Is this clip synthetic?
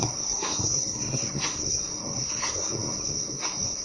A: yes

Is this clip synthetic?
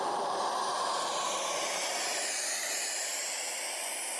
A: no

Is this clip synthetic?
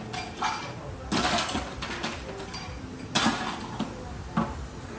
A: no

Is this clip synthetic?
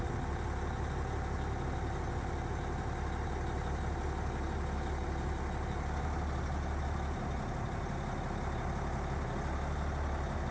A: no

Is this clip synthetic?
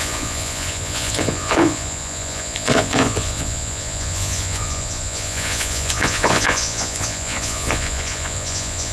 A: yes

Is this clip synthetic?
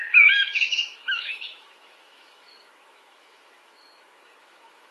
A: yes